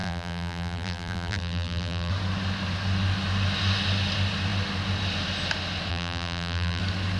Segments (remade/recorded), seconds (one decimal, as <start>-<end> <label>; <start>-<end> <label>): 0.0-2.1 remade; 2.1-5.9 recorded; 5.9-6.8 remade; 6.8-7.2 recorded